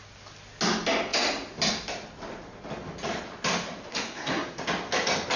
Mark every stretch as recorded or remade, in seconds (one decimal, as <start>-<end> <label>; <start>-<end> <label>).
0.0-3.9 recorded; 3.9-4.6 remade; 4.6-5.4 recorded